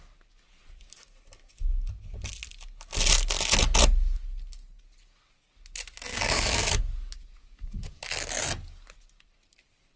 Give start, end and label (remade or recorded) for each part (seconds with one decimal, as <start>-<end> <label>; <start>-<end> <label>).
0.0-6.1 recorded; 6.1-6.8 remade; 6.8-7.4 recorded; 7.4-8.0 remade; 8.0-10.0 recorded